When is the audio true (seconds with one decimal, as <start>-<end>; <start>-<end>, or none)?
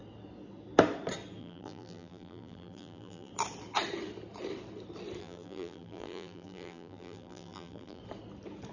0.0-1.4; 3.3-5.2; 8.0-8.7